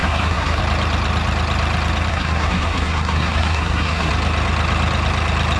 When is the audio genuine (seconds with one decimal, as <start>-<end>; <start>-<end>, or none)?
0.6-2.1; 4.1-5.6